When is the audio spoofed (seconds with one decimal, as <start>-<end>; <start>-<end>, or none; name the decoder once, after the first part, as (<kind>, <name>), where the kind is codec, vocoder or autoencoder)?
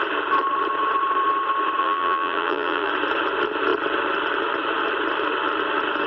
1.8-2.9 (vocoder, BigVGAN v2)